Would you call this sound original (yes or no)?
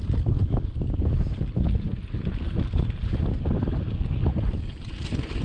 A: yes